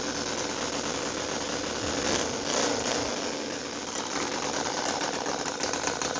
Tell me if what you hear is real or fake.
real